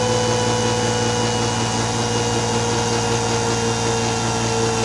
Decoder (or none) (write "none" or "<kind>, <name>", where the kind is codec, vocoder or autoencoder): none